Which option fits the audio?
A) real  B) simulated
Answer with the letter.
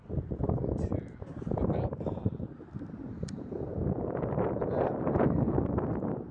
A